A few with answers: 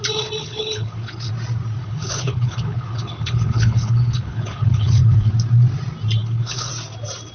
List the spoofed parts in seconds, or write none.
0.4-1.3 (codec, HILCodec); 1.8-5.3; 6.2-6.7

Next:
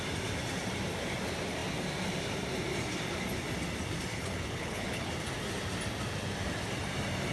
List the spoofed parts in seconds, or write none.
4.1-5.1 (codec, HILCodec)

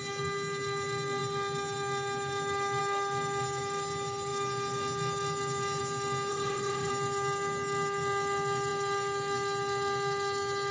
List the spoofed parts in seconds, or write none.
6.3-6.9 (codec, HILCodec)

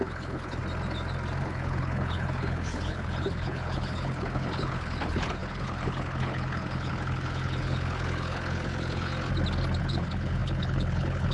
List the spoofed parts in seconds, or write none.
0.0-0.6 (codec, HILCodec); 1.4-9.1; 9.8-11.3